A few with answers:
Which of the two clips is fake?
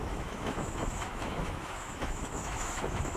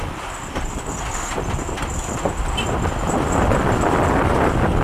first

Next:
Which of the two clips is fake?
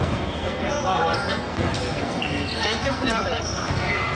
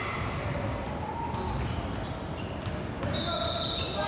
first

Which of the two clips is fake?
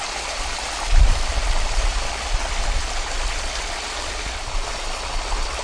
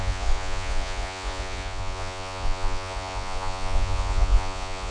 second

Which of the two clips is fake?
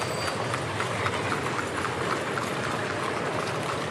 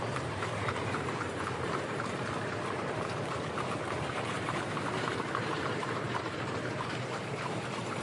second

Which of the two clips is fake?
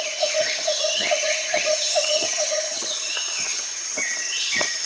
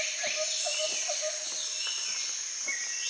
first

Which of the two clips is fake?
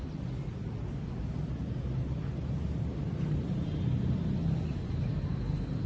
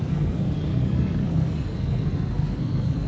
second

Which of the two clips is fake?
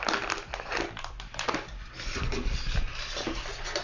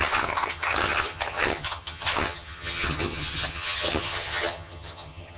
second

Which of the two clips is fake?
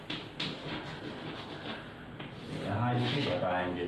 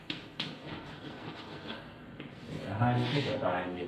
second